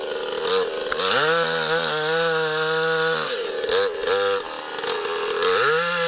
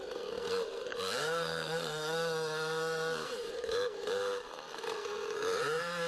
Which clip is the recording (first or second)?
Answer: first